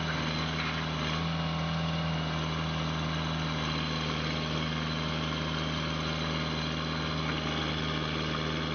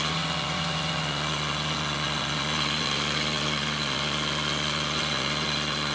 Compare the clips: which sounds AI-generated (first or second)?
second